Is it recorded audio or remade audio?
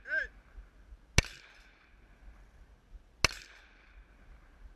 recorded